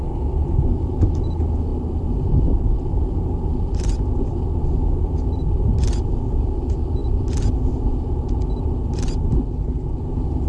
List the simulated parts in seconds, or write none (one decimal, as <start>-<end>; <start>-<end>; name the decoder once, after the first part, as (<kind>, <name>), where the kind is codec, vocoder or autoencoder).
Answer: none